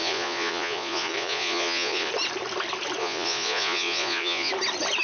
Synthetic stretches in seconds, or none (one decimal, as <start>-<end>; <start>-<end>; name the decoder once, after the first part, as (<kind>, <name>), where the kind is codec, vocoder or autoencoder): 0.0-2.1 (vocoder, Vocos); 3.0-4.5